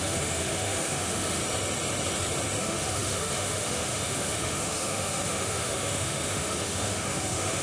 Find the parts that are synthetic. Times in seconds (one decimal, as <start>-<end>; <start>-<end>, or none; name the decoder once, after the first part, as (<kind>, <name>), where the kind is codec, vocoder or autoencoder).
0.0-1.4 (autoencoder, DAC-VAE); 2.6-7.6